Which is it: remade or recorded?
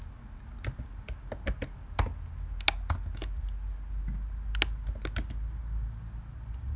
recorded